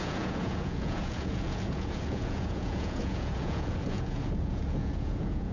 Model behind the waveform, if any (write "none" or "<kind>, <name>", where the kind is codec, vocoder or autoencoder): vocoder, Vocos